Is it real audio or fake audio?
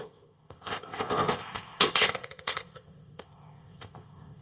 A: fake